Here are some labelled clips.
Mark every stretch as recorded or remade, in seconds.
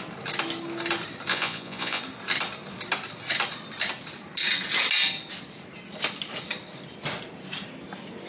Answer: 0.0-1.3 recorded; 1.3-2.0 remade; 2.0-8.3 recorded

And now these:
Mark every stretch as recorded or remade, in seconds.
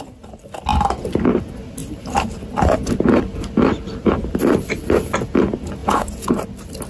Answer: 0.0-5.8 recorded; 5.8-6.3 remade; 6.3-6.9 recorded